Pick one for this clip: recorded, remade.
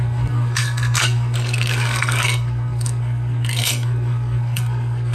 remade